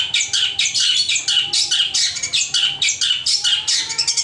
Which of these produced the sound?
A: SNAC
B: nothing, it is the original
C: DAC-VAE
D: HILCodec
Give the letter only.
B